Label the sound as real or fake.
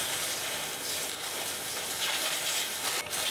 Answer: real